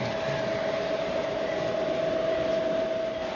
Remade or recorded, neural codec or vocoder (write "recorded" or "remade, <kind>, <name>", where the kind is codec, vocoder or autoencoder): recorded